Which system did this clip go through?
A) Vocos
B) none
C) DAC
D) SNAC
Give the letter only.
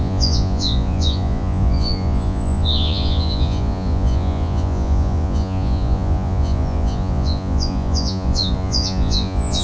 A